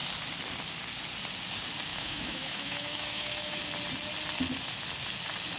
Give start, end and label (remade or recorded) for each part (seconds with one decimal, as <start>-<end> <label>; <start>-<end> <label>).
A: 0.0-1.9 recorded; 1.9-3.6 remade; 3.6-5.6 recorded